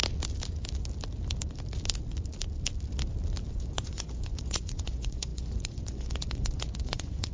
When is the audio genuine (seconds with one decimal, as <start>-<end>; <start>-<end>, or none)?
0.0-3.5